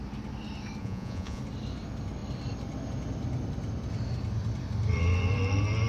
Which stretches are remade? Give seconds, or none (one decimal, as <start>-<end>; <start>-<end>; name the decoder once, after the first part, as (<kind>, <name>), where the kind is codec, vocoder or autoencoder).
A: 0.8-1.4 (vocoder, Vocos)